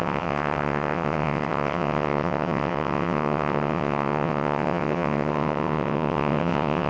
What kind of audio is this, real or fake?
fake